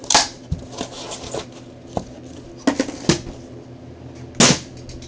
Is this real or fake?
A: real